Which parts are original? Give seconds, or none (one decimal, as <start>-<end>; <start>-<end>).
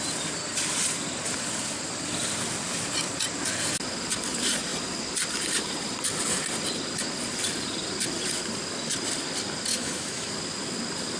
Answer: 0.0-9.7; 10.3-11.2